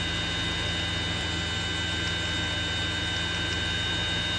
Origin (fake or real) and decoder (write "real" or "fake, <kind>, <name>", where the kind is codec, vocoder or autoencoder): real